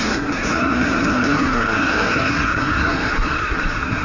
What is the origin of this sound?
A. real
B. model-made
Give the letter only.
B